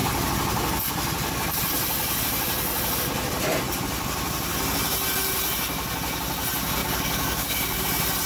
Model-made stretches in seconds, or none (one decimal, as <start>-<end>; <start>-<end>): 6.8-7.8